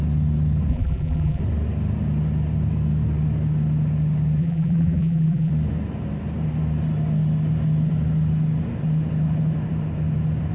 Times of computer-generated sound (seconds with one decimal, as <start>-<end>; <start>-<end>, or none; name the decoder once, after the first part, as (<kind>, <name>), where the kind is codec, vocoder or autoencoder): 0.7-1.4 (vocoder, BigVGAN v2); 4.4-5.5